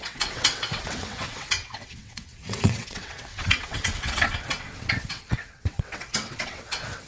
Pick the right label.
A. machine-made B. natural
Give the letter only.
A